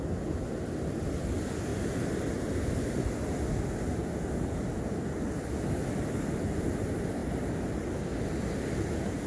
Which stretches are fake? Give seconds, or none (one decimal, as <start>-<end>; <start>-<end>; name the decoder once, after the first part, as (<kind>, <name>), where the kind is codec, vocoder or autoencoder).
none